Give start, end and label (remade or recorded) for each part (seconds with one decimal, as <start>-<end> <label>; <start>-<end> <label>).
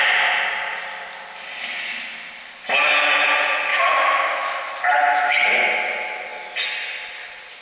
0.0-3.7 recorded; 3.7-4.7 remade; 4.7-7.6 recorded